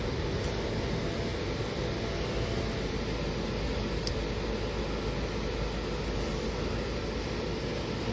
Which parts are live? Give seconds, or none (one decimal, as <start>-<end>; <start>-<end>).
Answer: 0.0-8.1